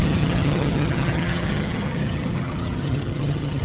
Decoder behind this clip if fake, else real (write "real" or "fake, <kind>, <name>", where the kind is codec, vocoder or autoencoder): fake, vocoder, HiFi-GAN